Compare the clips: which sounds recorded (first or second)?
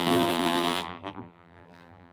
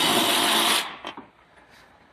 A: second